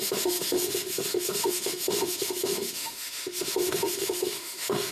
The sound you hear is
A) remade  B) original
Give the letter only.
A